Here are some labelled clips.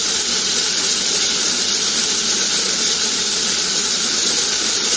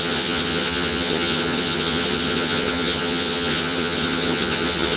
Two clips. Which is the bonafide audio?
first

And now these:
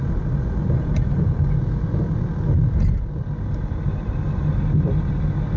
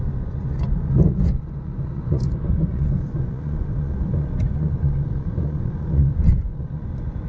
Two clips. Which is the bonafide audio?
first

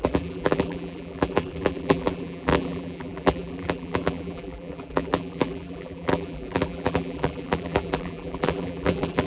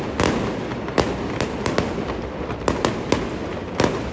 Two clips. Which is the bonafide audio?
second